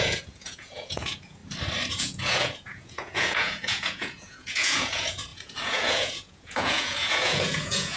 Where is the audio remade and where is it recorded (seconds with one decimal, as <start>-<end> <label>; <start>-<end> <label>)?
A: 0.0-1.4 remade; 1.4-1.9 recorded; 1.9-8.0 remade